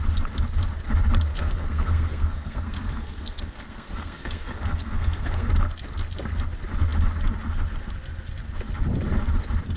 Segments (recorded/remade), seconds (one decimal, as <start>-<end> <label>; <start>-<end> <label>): 0.0-1.3 recorded; 1.3-5.5 remade; 5.5-9.8 recorded

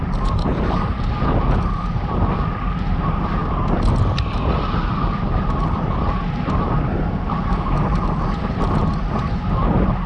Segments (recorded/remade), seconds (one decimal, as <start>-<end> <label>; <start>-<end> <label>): 0.0-8.8 recorded; 8.8-9.3 remade; 9.3-10.1 recorded